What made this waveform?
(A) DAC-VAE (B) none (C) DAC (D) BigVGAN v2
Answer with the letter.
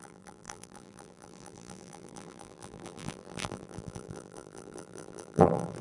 D